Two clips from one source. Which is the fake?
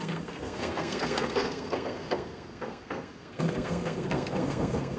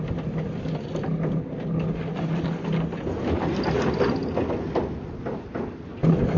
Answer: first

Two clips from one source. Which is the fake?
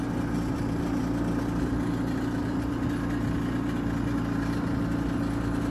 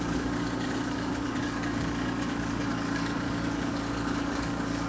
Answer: second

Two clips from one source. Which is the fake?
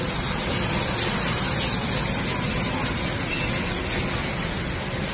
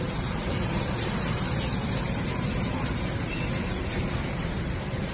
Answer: second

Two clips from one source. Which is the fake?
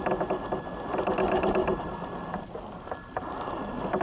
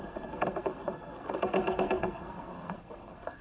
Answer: second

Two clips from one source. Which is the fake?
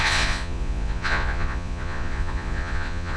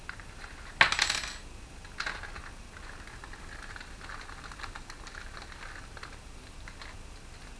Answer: first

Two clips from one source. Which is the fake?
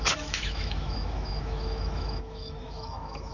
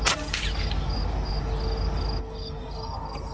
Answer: first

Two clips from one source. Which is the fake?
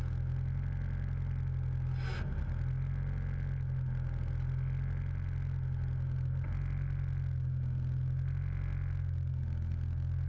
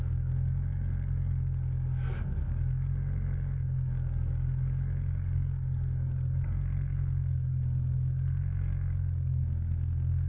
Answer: second